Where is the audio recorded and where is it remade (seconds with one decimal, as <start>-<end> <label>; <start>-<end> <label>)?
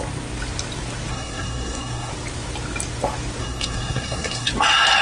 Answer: 0.0-1.1 recorded; 1.1-2.1 remade; 2.1-3.4 recorded; 3.4-4.5 remade; 4.5-5.0 recorded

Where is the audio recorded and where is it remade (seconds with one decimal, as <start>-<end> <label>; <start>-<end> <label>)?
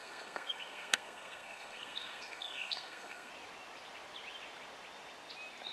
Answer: 0.0-3.3 remade; 3.3-5.7 recorded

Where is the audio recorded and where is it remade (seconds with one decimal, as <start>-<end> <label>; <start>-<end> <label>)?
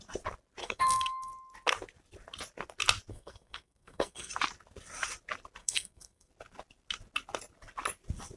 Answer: 0.0-0.6 recorded; 0.6-1.3 remade; 1.3-3.1 recorded; 3.1-4.3 remade; 4.3-5.6 recorded; 5.6-6.3 remade; 6.3-8.4 recorded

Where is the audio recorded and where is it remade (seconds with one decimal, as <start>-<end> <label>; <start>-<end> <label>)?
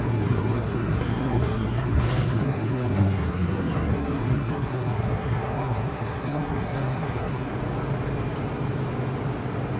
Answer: 0.0-7.5 remade; 7.5-9.8 recorded